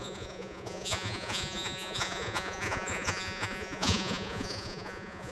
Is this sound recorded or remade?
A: remade